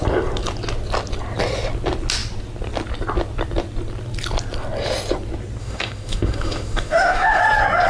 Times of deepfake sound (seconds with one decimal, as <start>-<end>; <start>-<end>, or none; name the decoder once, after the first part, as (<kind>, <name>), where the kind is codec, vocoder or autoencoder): 5.6-7.4 (autoencoder, DAC-VAE)